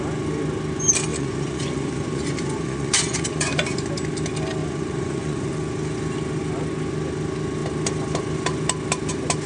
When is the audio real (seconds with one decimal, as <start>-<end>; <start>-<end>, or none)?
0.0-1.1; 3.9-4.6; 5.5-9.5